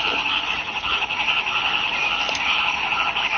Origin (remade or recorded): remade